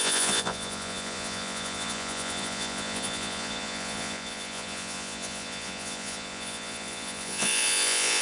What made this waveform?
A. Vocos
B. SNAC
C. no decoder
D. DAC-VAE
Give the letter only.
A